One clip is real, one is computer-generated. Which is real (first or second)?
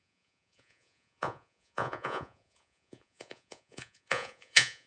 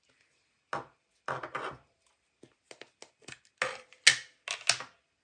second